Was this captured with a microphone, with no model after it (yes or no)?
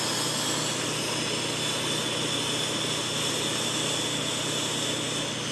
yes